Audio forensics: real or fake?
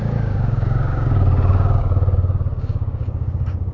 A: fake